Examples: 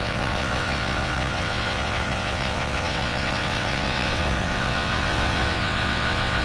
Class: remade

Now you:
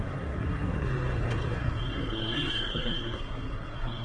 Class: remade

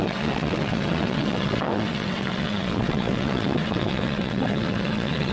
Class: remade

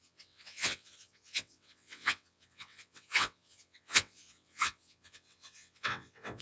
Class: remade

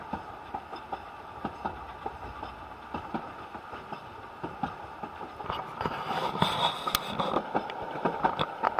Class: recorded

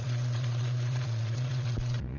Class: remade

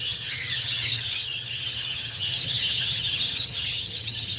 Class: remade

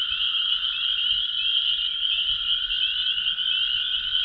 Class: recorded